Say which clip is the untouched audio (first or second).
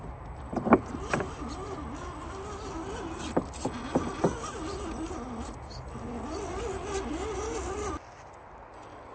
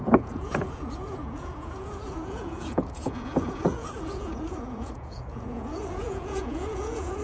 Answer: first